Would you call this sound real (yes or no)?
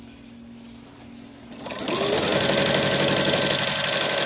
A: yes